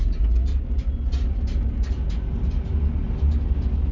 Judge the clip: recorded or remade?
recorded